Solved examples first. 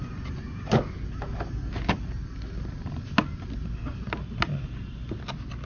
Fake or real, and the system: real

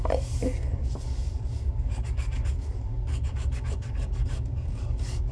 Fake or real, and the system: fake, codec, DAC